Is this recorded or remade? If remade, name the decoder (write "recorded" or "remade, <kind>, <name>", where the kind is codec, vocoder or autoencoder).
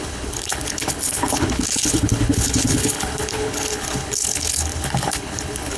remade, codec, HILCodec